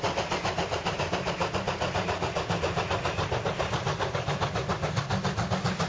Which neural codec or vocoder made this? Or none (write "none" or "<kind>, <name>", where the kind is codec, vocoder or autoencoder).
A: none